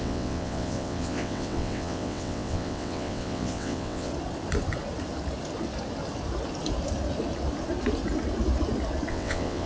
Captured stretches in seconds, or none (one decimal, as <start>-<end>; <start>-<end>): 4.1-9.1